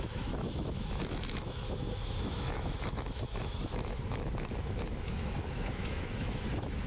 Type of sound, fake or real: fake